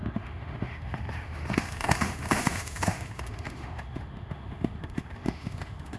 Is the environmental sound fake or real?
fake